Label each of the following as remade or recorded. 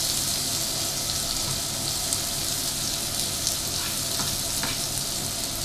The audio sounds recorded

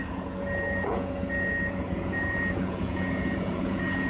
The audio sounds remade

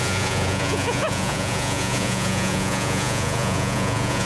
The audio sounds remade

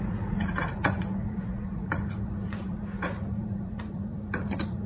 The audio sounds remade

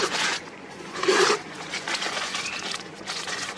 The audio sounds remade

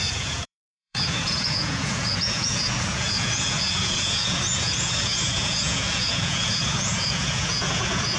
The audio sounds remade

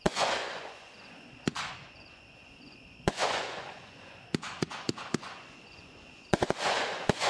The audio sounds remade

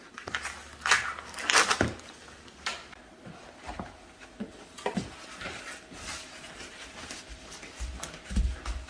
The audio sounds recorded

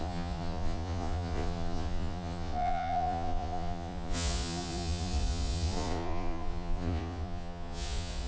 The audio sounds remade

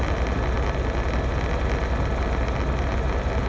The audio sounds recorded